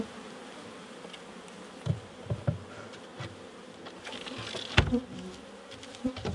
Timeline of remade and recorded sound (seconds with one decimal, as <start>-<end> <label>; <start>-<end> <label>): 0.0-6.3 recorded